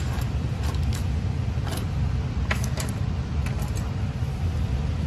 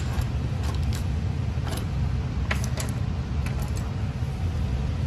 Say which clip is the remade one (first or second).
first